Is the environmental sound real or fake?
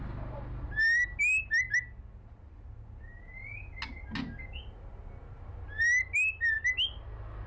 real